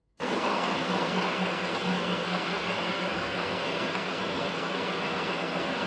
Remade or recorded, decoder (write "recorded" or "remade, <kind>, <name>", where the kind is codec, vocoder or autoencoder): remade, codec, SNAC